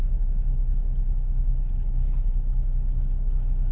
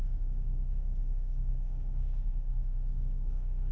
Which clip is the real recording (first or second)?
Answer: first